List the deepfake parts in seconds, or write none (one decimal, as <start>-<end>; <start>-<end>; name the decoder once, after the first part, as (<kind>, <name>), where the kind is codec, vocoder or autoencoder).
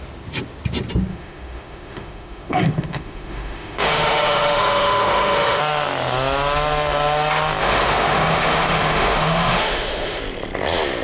1.1-5.6 (autoencoder, DAC-VAE); 7.6-10.2